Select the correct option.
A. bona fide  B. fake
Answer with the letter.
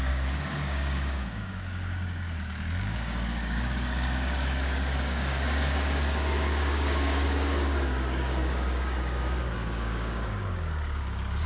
B